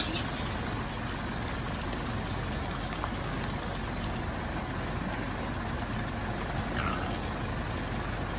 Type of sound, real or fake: real